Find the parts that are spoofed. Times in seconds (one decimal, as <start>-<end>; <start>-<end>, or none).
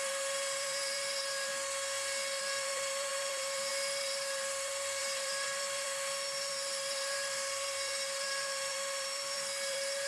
0.0-1.5; 2.4-10.1